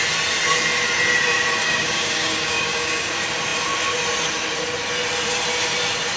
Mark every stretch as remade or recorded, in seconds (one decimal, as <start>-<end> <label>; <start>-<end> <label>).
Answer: 0.0-1.6 recorded; 1.6-3.1 remade; 3.1-6.2 recorded